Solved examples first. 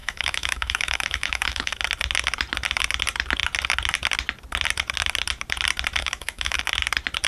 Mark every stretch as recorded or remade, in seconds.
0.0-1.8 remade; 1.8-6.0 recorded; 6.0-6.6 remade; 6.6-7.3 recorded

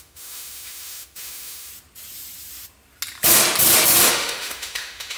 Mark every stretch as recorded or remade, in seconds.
0.0-1.7 remade; 1.7-4.1 recorded; 4.1-5.2 remade

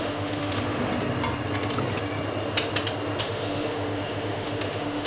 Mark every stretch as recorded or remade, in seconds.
0.0-0.9 remade; 0.9-3.2 recorded; 3.2-5.1 remade